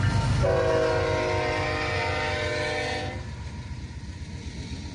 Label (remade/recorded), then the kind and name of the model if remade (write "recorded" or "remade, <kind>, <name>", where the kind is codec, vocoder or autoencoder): recorded